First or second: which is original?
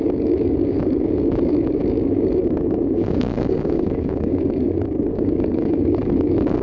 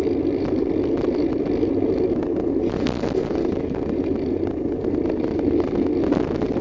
second